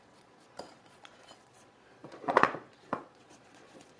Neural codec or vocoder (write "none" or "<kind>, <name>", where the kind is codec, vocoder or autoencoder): vocoder, Vocos